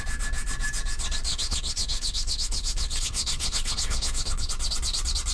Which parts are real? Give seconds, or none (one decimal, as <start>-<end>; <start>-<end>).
0.0-1.3; 4.5-5.3